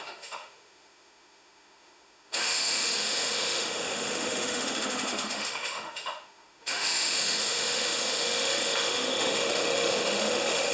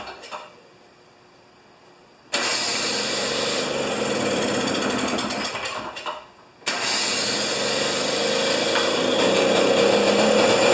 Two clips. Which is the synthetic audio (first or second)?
first